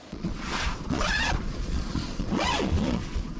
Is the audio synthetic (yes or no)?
yes